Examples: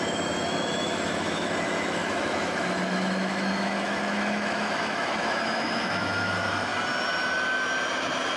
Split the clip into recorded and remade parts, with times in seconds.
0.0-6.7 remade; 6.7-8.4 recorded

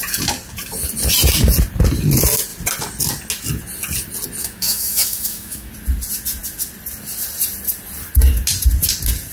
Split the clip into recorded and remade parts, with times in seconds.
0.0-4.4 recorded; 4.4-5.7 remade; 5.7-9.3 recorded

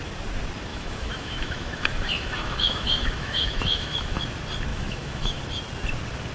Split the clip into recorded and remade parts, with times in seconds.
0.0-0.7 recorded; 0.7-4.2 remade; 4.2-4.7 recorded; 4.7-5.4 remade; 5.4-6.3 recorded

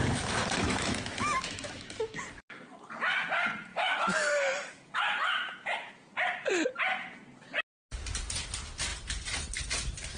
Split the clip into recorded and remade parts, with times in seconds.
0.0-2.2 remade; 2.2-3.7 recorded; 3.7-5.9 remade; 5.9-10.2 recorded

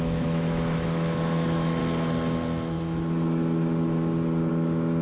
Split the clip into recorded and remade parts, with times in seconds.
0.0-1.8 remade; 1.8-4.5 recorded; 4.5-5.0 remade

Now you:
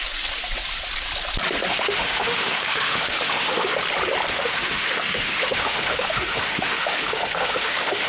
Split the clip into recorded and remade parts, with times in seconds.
0.0-1.7 recorded; 1.7-3.8 remade; 3.8-4.3 recorded; 4.3-8.1 remade

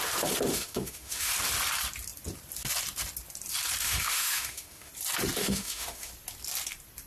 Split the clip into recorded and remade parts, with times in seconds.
0.0-0.5 recorded; 0.5-1.3 remade; 1.3-3.8 recorded; 3.8-4.9 remade; 4.9-5.4 recorded; 5.4-6.1 remade; 6.1-7.1 recorded

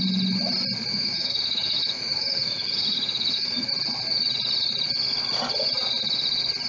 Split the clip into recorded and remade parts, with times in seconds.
0.0-0.9 recorded; 0.9-3.7 remade; 3.7-6.7 recorded